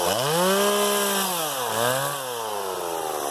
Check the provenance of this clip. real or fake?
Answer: real